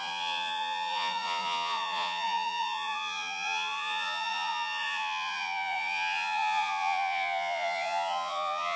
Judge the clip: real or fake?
fake